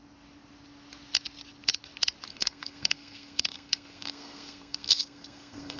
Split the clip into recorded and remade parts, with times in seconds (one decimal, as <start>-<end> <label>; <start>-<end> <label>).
0.0-2.3 recorded; 2.3-5.8 remade